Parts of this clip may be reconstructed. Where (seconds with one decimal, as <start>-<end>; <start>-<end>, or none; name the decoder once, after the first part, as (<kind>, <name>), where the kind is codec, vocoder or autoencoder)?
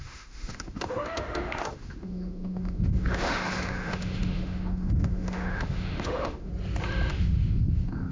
0.0-6.5 (autoencoder, DAC-VAE); 7.1-8.1